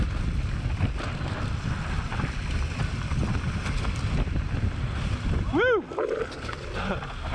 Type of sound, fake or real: real